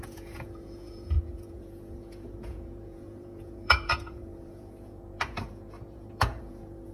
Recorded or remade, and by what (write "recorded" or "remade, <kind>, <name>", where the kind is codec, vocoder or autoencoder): remade, vocoder, Vocos